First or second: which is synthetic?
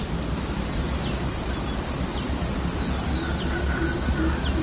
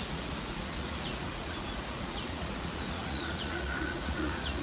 second